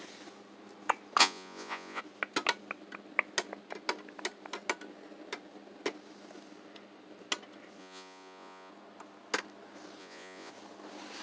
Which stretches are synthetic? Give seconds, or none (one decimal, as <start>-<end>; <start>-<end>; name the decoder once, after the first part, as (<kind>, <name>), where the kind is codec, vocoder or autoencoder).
1.2-2.0 (vocoder, Vocos); 7.8-8.7; 10.0-10.5